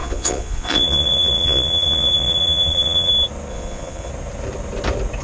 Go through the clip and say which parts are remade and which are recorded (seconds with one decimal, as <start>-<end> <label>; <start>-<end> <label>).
0.0-3.1 remade; 3.1-3.5 recorded; 3.5-4.1 remade; 4.1-5.2 recorded